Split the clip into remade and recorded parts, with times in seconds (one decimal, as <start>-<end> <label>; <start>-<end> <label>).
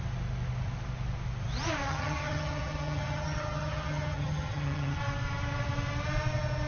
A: 0.0-1.9 recorded; 1.9-5.0 remade; 5.0-6.7 recorded